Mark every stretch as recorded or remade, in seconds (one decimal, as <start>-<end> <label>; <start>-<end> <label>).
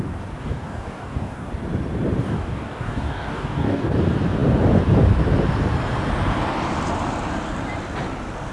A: 0.0-0.4 recorded; 0.4-1.5 remade; 1.5-2.2 recorded; 2.2-3.9 remade; 3.9-8.5 recorded